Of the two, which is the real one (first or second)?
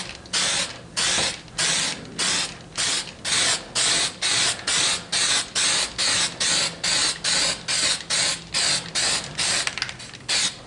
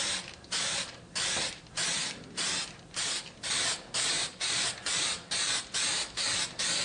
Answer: first